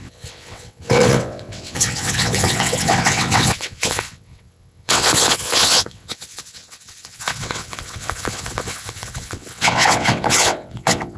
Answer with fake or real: fake